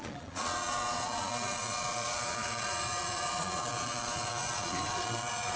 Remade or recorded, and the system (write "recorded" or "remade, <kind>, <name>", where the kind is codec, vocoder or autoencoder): remade, vocoder, Vocos